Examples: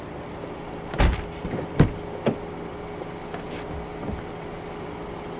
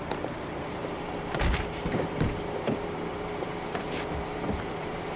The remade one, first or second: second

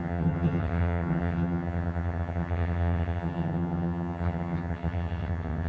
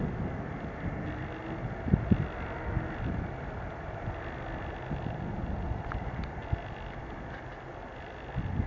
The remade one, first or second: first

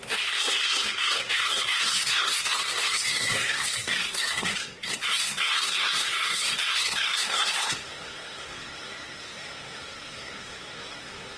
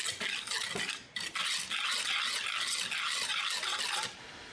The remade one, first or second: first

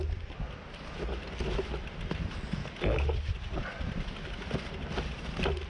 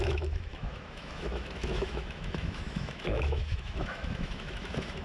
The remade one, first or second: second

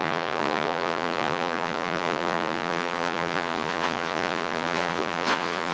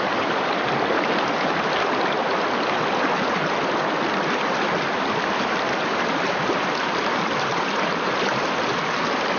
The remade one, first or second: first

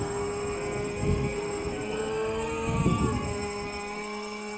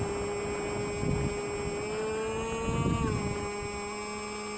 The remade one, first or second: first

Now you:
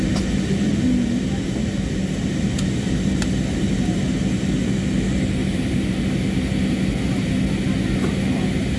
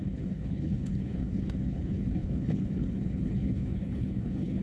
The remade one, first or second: second